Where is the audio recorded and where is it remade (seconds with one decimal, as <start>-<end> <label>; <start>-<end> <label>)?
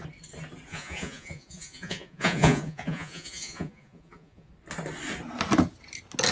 0.0-0.7 recorded; 0.7-4.5 remade; 4.5-6.3 recorded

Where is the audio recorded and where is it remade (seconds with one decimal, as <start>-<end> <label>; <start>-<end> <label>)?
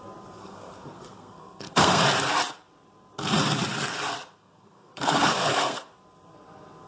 0.0-0.4 recorded; 0.4-2.0 remade; 2.0-4.4 recorded; 4.4-5.9 remade; 5.9-6.9 recorded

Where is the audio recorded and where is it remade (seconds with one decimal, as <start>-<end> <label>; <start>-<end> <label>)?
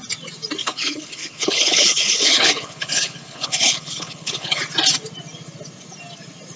0.0-0.6 recorded; 0.6-4.6 remade; 4.6-6.6 recorded